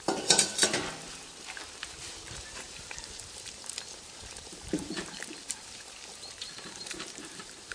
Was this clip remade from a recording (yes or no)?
yes